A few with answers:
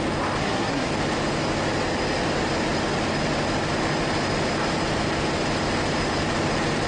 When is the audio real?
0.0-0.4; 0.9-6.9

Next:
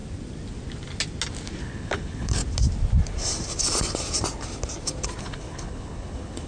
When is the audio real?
0.0-1.6; 2.4-5.2

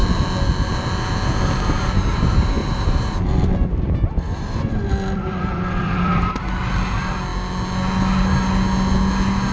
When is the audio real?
0.0-2.6; 6.5-9.5

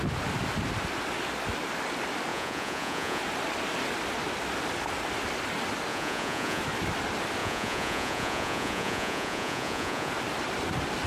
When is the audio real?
0.0-2.3; 3.2-5.9; 6.6-7.4; 10.1-11.1

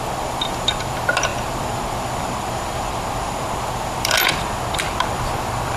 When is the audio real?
none

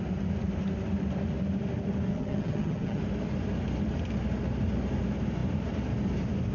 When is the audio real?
0.0-2.1; 3.0-6.5

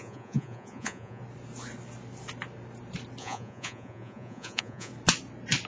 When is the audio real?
1.2-3.2; 4.9-5.7

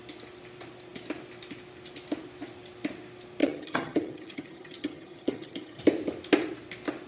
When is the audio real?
0.0-3.4; 5.8-7.1